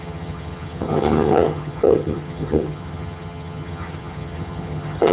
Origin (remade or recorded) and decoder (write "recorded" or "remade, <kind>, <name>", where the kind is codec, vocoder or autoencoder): remade, vocoder, HiFi-GAN